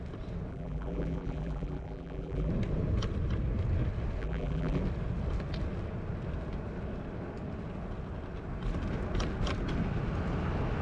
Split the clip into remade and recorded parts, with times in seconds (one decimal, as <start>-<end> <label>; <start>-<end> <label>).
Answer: 0.0-0.5 recorded; 0.5-2.5 remade; 2.5-4.2 recorded; 4.2-4.8 remade; 4.8-10.8 recorded